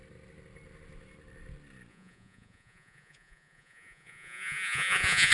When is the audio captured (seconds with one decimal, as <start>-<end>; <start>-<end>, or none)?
0.0-1.9